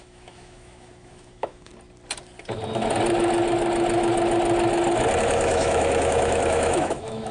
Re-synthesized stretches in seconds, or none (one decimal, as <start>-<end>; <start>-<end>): 0.0-1.7; 5.2-7.3